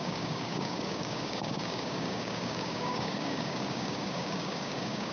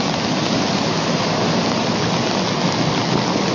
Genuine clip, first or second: second